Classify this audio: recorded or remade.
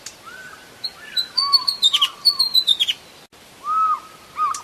recorded